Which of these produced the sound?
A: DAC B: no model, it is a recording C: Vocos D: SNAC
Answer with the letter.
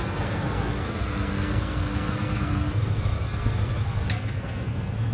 D